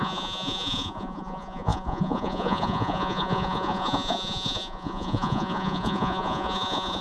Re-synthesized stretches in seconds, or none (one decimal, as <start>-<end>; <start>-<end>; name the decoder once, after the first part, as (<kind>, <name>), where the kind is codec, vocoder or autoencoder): 0.0-7.0 (vocoder, Vocos)